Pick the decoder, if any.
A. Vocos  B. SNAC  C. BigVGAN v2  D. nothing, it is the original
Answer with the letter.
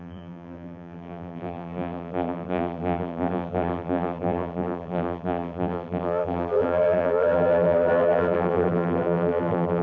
C